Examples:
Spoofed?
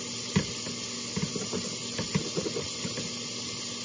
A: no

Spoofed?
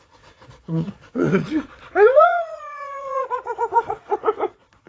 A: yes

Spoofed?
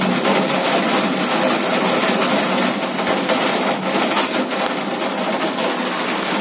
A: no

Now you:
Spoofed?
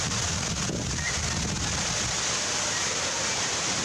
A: no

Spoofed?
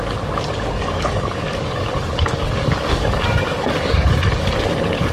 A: yes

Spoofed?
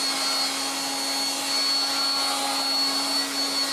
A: no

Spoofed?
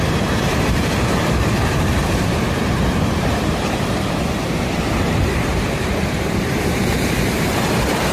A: yes